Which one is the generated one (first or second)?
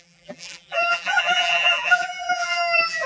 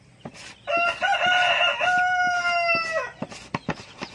first